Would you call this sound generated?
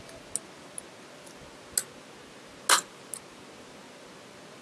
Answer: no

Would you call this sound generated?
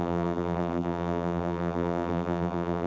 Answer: yes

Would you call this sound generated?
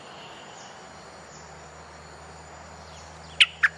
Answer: no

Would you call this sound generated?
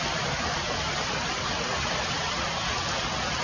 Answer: no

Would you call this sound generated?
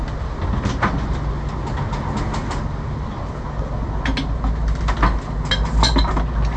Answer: no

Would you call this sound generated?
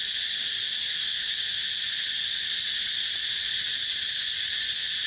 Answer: no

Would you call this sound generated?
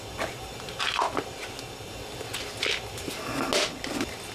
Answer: no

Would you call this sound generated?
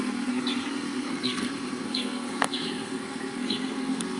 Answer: yes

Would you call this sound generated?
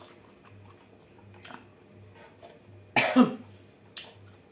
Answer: no